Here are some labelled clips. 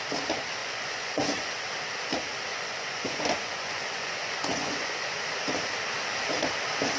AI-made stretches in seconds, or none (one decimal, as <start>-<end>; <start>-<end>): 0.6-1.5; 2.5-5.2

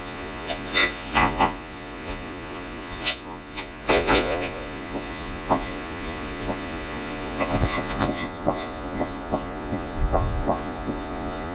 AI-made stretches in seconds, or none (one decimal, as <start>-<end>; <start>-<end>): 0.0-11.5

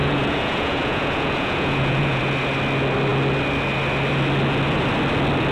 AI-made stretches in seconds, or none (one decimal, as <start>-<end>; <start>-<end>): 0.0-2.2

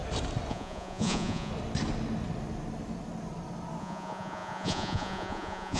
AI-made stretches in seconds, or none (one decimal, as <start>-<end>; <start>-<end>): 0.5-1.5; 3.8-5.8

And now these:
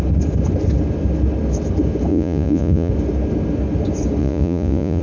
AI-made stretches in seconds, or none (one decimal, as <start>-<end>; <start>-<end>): 2.1-2.9; 4.2-5.0

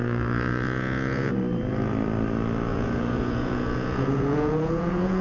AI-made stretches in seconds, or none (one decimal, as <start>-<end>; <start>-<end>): 0.0-1.3; 2.7-5.2

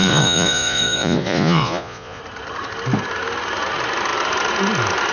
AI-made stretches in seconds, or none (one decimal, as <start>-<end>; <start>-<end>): 0.0-2.2